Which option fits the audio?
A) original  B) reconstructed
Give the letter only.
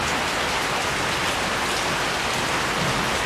A